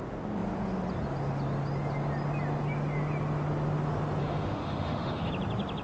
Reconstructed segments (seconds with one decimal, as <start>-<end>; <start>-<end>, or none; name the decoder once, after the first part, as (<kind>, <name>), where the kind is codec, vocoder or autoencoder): 4.2-5.3 (autoencoder, DAC-VAE)

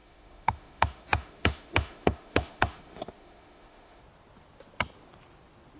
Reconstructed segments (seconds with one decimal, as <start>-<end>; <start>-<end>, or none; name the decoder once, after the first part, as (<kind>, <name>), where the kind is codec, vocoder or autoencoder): 0.0-4.0 (autoencoder, DAC-VAE)